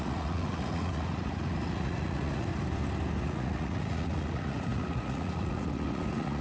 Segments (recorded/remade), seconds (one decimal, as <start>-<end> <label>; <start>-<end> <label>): 0.0-2.5 remade; 2.5-3.2 recorded; 3.2-6.4 remade